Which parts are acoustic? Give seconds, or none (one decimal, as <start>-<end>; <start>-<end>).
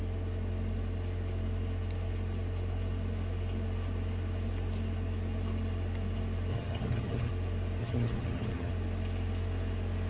0.0-6.5; 7.3-7.8; 8.7-10.1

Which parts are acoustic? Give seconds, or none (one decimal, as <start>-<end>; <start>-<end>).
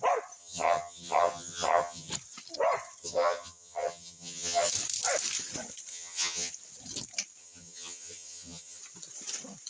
0.0-0.4; 2.1-3.0; 4.7-5.9; 6.5-7.4; 8.8-9.7